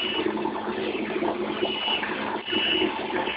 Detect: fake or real real